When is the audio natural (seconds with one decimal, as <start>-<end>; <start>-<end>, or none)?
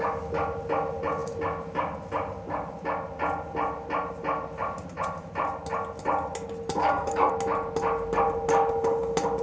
0.0-6.8; 7.3-9.4